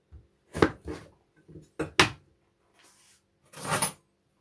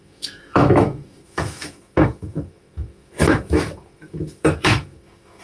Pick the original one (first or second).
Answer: first